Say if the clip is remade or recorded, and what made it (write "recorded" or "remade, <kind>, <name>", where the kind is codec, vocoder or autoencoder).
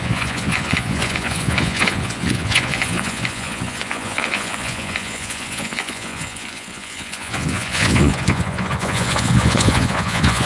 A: remade, vocoder, Vocos